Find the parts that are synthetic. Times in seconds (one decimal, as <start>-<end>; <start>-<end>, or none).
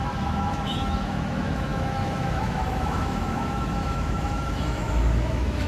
0.0-5.7